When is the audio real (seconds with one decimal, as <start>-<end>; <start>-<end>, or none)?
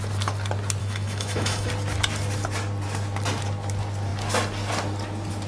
0.0-0.8; 1.7-5.5